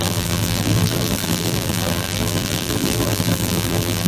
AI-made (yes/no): yes